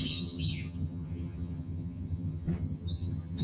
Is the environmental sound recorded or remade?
remade